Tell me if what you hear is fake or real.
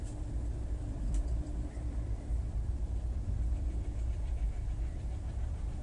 fake